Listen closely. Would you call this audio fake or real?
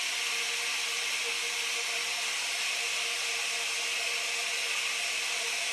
real